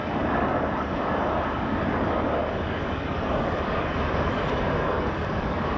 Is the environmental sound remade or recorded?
remade